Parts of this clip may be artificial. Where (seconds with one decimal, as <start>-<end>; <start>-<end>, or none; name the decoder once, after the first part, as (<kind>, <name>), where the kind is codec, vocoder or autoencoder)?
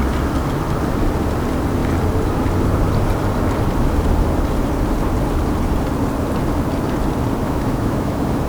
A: 7.4-8.5 (autoencoder, DAC-VAE)